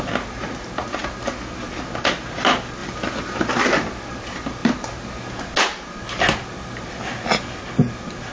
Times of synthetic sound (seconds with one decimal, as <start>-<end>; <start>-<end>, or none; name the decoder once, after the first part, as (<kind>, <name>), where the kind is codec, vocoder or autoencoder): none